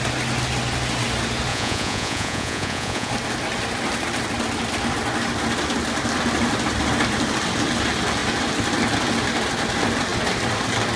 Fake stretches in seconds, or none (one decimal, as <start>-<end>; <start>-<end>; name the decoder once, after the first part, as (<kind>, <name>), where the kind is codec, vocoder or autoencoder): 1.5-3.1 (vocoder, Vocos)